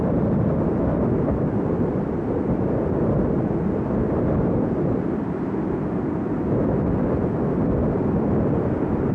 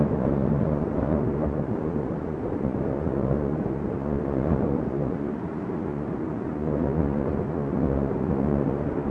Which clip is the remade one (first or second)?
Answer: second